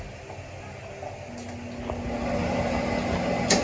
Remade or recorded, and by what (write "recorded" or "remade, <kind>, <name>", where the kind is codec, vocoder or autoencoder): recorded